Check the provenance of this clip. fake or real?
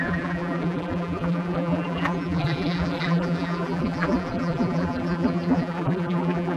fake